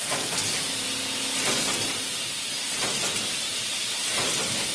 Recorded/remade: recorded